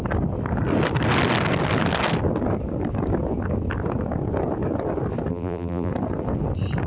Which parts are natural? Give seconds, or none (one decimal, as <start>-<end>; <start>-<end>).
0.0-5.3; 5.9-6.9